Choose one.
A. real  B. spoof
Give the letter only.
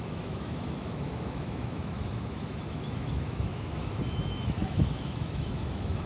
B